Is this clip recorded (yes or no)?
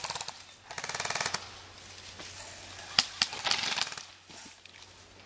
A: yes